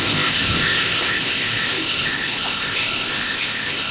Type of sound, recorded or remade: remade